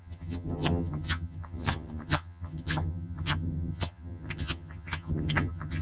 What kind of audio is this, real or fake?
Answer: fake